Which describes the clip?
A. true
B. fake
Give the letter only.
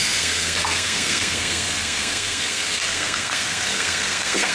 B